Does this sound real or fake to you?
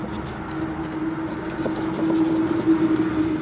real